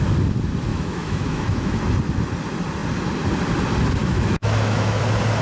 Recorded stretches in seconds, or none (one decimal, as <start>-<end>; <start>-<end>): 0.0-0.7; 1.8-4.0; 5.0-5.4